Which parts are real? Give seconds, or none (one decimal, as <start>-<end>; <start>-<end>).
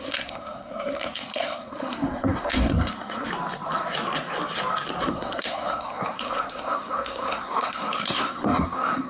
3.3-5.1